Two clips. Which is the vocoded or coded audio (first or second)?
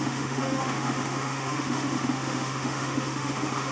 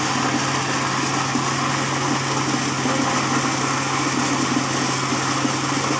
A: first